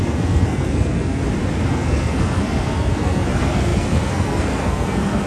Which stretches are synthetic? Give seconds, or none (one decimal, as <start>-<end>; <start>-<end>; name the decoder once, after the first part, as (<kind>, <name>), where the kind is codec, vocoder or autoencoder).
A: 0.0-1.2 (codec, SNAC); 1.7-5.3